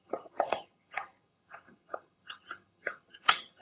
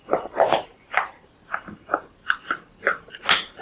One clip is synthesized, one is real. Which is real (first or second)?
second